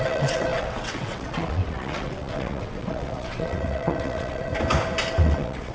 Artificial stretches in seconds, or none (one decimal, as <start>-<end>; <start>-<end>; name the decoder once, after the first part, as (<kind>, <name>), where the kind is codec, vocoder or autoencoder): 0.0-4.5 (vocoder, WaveNeXt); 5.1-5.7